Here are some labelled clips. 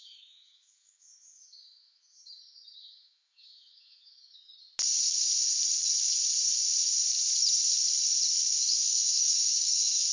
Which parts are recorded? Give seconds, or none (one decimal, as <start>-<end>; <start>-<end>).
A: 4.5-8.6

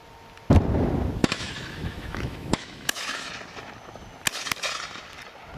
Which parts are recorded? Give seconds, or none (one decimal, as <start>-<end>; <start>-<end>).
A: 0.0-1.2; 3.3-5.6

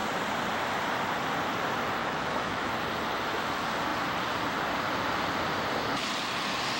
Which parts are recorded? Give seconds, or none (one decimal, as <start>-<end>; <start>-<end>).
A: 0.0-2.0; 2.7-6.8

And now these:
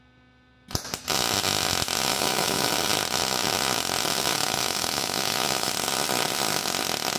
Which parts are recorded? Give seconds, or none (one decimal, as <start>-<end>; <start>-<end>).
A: 0.0-2.1; 2.7-4.3; 5.7-7.2

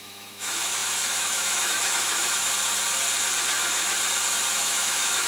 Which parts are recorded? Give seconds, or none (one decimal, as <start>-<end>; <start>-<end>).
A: 2.5-4.5